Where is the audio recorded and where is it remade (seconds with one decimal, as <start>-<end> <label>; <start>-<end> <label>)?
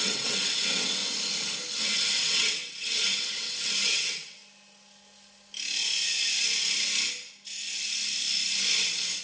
0.0-1.0 remade; 1.0-1.8 recorded; 1.8-4.4 remade; 4.4-9.2 recorded